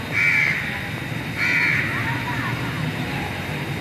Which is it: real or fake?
real